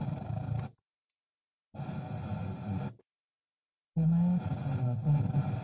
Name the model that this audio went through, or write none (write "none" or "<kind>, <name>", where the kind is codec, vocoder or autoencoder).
none